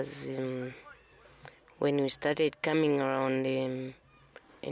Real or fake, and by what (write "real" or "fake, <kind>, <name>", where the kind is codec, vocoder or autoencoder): real